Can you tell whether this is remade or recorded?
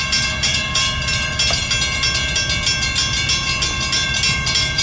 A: recorded